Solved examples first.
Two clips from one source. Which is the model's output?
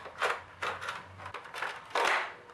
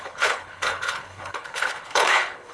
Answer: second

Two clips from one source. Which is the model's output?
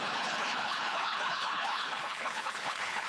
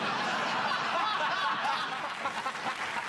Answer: first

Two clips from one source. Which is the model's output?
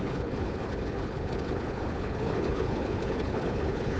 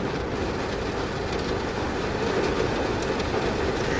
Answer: first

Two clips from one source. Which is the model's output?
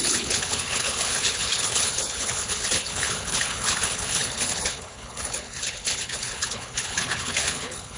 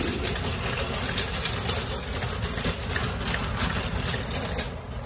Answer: first